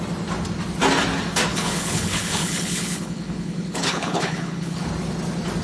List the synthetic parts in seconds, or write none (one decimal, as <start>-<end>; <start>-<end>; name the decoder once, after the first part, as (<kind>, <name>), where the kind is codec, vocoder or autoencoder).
1.5-4.9 (codec, HILCodec)